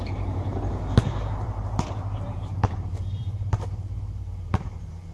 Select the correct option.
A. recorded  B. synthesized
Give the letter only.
B